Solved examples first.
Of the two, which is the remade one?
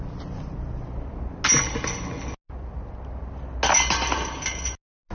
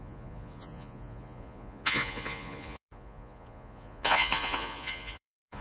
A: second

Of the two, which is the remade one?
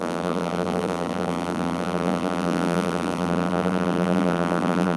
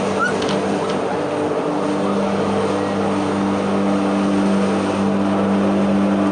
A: first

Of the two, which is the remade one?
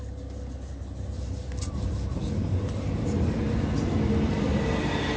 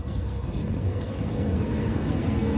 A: second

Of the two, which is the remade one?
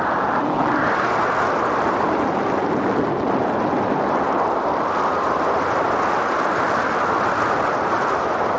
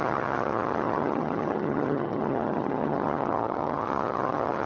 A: second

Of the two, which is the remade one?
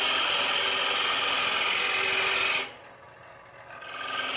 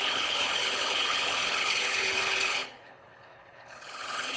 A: second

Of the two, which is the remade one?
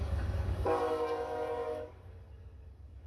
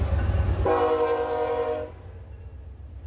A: first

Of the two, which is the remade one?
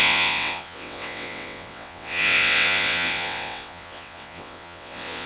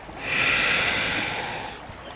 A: first